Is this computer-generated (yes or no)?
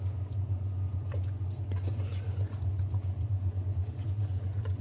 yes